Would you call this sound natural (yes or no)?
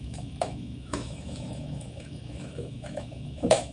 no